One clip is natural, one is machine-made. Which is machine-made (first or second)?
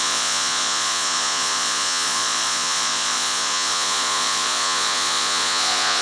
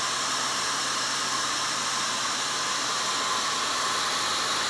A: first